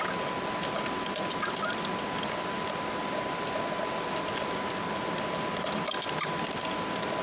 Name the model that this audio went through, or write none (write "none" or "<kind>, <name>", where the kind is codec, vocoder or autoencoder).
none